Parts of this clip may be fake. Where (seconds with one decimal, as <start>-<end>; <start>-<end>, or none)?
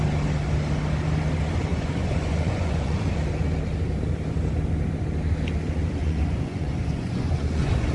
1.7-3.0; 6.0-7.9